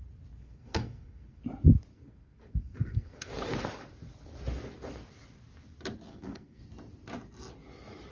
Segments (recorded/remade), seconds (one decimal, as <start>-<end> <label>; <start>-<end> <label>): 0.0-0.4 recorded; 0.4-1.4 remade; 1.4-1.9 recorded; 1.9-3.3 remade; 3.3-6.1 recorded; 6.1-6.6 remade; 6.6-8.1 recorded